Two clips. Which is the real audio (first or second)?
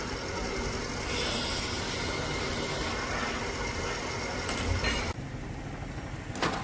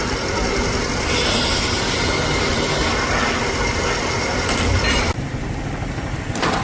first